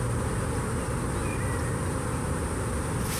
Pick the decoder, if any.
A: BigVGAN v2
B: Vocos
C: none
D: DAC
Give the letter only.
C